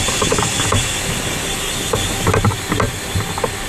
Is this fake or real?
real